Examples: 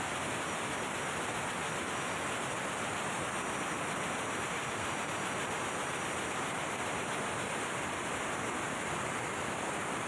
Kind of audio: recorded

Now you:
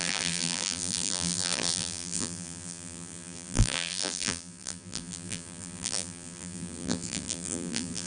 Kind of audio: remade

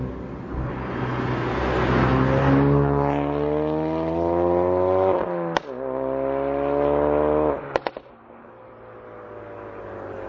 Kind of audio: recorded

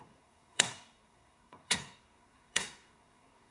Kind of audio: remade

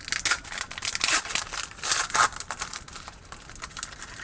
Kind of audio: recorded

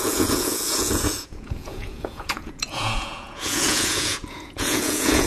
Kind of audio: remade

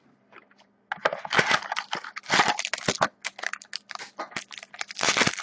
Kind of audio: recorded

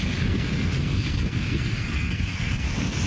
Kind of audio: remade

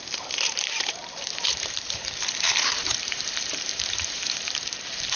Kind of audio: remade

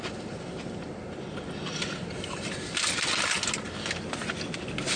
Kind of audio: recorded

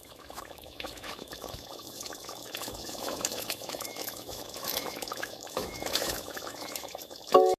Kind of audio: remade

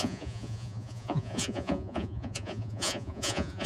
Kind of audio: remade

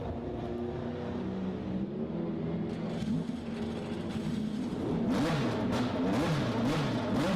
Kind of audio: recorded